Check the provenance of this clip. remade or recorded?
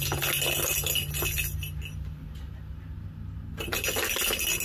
recorded